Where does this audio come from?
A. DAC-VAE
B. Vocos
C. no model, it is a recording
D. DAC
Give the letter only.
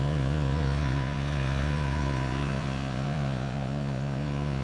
B